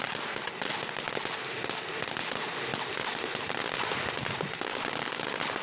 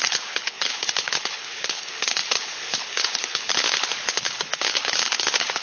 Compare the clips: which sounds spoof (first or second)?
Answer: second